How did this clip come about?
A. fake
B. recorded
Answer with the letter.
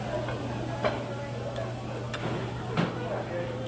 B